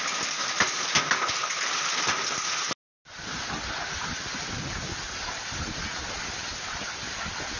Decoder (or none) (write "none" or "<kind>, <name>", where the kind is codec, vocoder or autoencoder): none